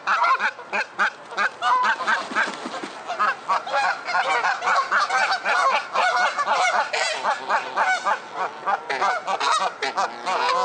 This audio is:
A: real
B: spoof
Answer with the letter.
A